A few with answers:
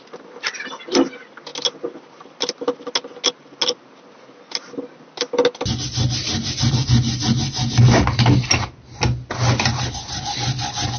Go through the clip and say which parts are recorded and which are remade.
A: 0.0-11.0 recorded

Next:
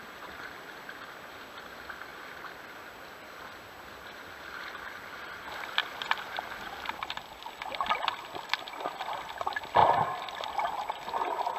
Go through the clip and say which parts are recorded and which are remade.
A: 0.0-2.1 recorded; 2.1-2.7 remade; 2.7-5.8 recorded; 5.8-7.5 remade; 7.5-11.6 recorded

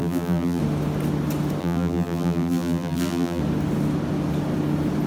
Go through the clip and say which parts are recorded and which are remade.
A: 0.0-0.6 remade; 0.6-1.6 recorded; 1.6-3.4 remade; 3.4-5.1 recorded

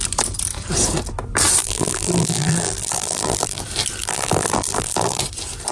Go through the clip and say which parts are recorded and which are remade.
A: 0.0-1.6 recorded; 1.6-3.6 remade; 3.6-4.0 recorded; 4.0-5.2 remade; 5.2-5.7 recorded

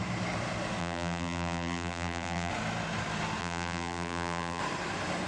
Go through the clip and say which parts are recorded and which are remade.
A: 0.0-0.8 recorded; 0.8-2.5 remade; 2.5-3.4 recorded; 3.4-4.6 remade; 4.6-5.3 recorded

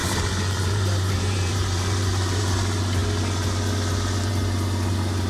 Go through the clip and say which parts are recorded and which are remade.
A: 0.0-2.4 remade; 2.4-5.3 recorded